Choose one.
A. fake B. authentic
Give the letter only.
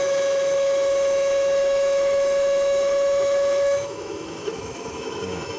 A